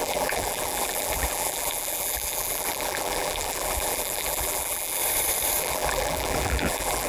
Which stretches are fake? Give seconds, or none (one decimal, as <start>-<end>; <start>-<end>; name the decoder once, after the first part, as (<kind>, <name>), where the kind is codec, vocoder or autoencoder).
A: 0.0-5.0 (vocoder, BigVGAN v2); 5.6-7.1